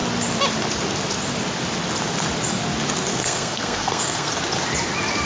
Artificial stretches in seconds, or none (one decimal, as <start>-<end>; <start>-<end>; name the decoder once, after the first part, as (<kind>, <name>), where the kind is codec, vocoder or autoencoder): 3.1-4.4 (codec, SNAC)

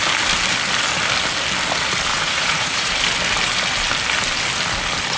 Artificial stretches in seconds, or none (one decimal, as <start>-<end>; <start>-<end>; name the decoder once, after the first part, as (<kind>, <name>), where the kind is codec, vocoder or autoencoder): 2.1-2.9 (vocoder, Vocos)